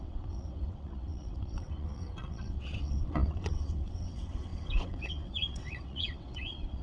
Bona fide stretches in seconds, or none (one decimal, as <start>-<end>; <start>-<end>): none